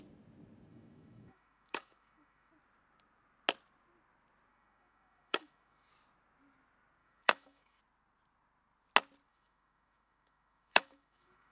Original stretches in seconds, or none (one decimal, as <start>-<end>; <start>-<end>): 0.0-0.7; 2.5-4.5; 5.9-7.0; 7.8-9.3